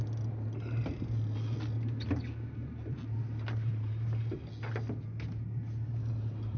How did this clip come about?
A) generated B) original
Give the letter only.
B